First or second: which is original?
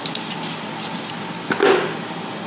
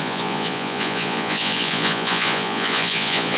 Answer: first